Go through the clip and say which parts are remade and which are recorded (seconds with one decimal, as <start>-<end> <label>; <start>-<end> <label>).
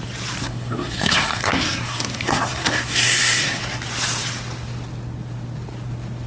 0.0-0.4 recorded; 0.4-3.6 remade; 3.6-6.3 recorded